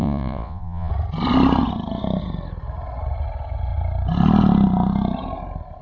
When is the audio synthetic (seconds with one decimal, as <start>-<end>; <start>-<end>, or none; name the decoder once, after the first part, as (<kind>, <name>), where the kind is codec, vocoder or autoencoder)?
0.0-0.9 (vocoder, Vocos)